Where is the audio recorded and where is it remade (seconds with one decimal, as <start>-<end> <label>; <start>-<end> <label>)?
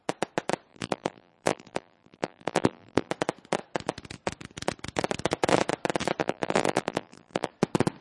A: 0.0-0.7 recorded; 0.7-3.1 remade; 3.1-6.2 recorded; 6.2-7.5 remade; 7.5-8.0 recorded